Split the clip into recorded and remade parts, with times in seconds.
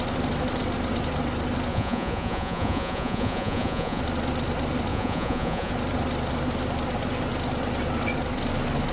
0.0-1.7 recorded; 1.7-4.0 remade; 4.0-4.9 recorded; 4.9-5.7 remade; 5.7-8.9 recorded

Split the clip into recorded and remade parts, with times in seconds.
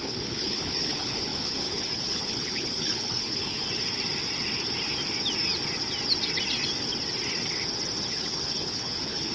0.0-3.6 remade; 3.6-8.1 recorded; 8.1-9.3 remade